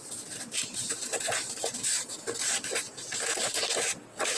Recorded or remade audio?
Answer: recorded